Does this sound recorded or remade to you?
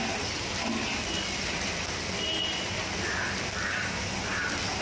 recorded